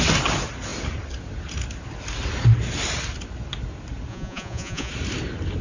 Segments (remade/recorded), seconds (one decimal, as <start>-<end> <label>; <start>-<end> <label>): 0.0-4.1 recorded; 4.1-4.9 remade; 4.9-5.6 recorded